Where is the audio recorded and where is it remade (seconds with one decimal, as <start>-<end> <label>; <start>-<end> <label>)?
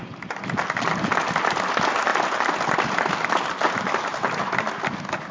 0.0-5.3 recorded